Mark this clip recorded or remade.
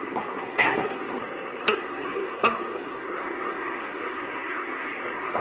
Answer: remade